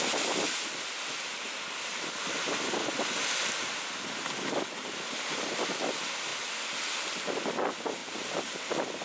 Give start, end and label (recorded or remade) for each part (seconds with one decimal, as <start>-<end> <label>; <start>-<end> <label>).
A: 0.0-9.0 recorded